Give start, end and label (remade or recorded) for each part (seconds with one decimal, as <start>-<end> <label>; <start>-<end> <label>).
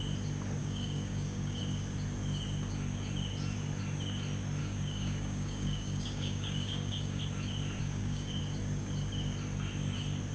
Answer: 0.0-0.6 recorded; 0.6-1.6 remade; 1.6-4.6 recorded; 4.6-7.2 remade; 7.2-7.8 recorded; 7.8-8.4 remade; 8.4-10.3 recorded